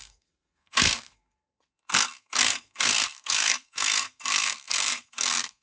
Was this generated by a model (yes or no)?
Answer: yes